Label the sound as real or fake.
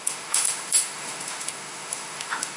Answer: fake